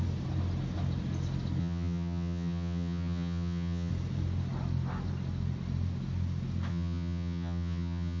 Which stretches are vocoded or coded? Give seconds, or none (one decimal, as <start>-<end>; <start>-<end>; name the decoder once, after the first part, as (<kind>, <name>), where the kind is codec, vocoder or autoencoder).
1.6-3.9 (vocoder, HiFi-GAN); 6.7-8.2